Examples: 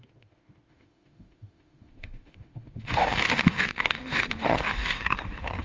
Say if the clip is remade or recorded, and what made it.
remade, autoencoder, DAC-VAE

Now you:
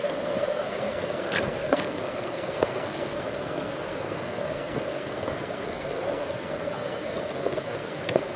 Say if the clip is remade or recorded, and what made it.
remade, codec, SNAC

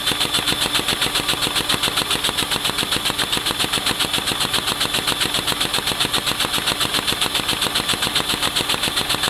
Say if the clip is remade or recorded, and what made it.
recorded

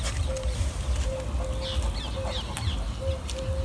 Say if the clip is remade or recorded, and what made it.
recorded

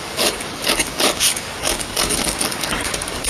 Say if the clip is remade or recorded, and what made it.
remade, codec, DAC